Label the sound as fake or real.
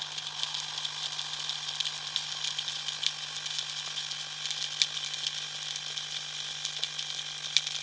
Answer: real